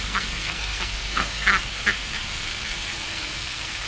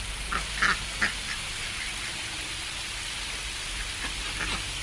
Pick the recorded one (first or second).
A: second